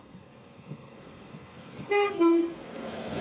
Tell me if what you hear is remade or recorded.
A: remade